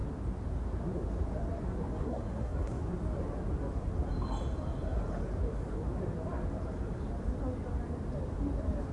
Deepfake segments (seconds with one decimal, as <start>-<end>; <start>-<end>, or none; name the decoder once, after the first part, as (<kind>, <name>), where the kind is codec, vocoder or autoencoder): 2.0-2.8 (codec, SNAC)